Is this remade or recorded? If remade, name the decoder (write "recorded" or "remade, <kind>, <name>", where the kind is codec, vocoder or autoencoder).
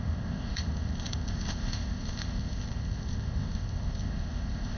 remade, codec, ZipCodec